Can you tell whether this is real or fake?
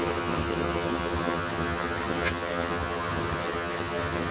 fake